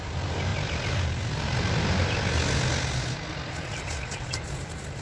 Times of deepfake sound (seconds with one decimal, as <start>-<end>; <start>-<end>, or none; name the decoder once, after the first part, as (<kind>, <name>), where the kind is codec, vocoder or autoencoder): none